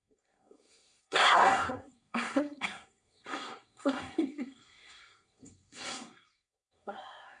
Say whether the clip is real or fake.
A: fake